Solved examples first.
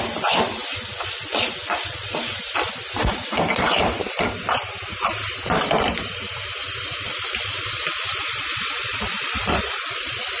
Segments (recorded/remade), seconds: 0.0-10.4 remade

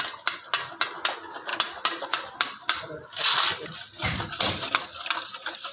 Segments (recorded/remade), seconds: 0.0-1.5 recorded; 1.5-4.4 remade; 4.4-5.7 recorded

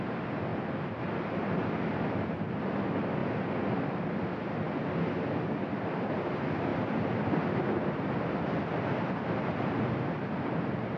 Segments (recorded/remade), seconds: 0.0-11.0 recorded

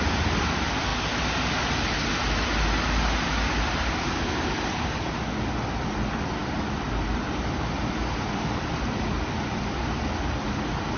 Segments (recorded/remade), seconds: 0.0-0.9 remade; 0.9-4.3 recorded; 4.3-11.0 remade

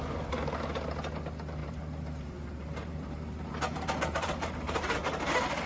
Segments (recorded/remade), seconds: 0.0-1.6 recorded; 1.6-5.0 remade; 5.0-5.7 recorded